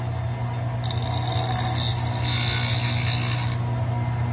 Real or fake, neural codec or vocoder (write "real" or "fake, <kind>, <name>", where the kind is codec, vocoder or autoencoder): real